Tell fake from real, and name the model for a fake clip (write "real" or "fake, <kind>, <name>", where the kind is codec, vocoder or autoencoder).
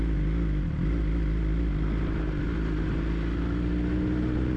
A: real